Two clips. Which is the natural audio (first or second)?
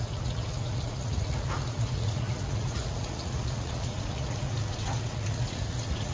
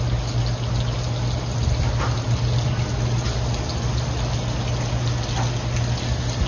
second